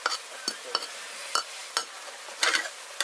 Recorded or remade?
recorded